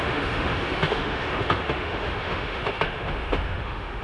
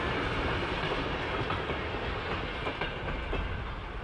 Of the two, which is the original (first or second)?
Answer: second